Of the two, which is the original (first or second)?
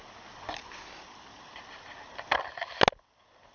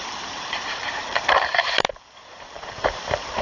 first